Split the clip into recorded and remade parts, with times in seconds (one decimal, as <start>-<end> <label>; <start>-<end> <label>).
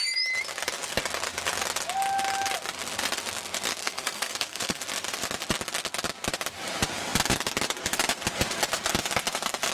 0.0-3.8 recorded; 3.8-4.8 remade; 4.8-9.7 recorded